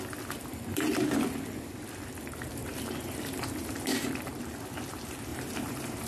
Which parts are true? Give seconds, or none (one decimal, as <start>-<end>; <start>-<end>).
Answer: 0.0-2.6; 4.7-5.3